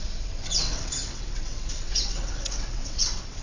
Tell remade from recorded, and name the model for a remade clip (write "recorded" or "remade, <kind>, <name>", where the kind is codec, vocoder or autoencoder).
remade, vocoder, WaveNeXt